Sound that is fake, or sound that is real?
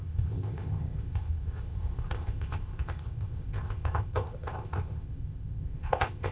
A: fake